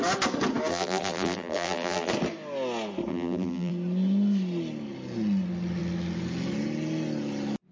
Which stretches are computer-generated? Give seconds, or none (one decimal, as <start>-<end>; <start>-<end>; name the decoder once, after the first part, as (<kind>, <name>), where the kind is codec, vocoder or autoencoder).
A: 0.7-2.1 (vocoder, BigVGAN v2); 3.1-3.7